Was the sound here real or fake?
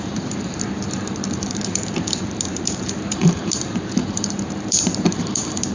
fake